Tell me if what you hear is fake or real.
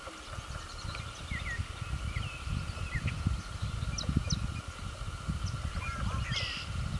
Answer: real